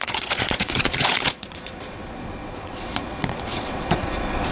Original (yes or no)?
no